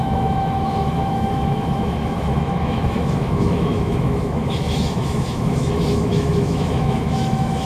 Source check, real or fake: fake